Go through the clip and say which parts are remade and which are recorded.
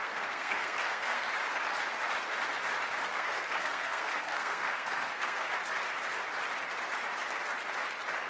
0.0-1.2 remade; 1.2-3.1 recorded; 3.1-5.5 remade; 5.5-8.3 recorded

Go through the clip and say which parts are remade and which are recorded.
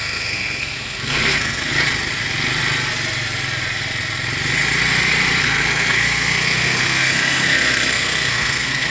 0.0-1.7 remade; 1.7-5.4 recorded; 5.4-8.9 remade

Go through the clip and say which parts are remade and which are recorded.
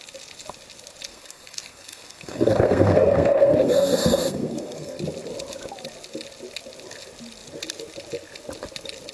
0.0-1.1 recorded; 1.1-5.0 remade; 5.0-9.1 recorded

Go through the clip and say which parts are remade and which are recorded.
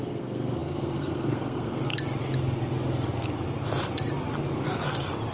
0.0-1.9 remade; 1.9-5.3 recorded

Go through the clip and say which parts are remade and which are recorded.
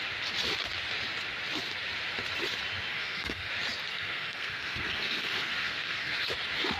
0.0-2.9 recorded; 2.9-3.5 remade; 3.5-3.9 recorded; 3.9-6.3 remade; 6.3-6.8 recorded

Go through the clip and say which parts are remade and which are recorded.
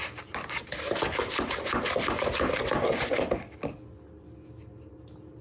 0.0-5.4 recorded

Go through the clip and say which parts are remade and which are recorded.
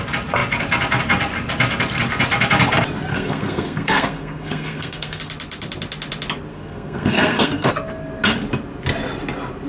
0.0-3.1 recorded; 3.1-5.2 remade; 5.2-6.5 recorded; 6.5-7.7 remade; 7.7-9.7 recorded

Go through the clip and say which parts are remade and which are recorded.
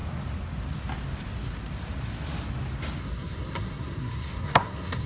0.0-3.0 recorded; 3.0-5.1 remade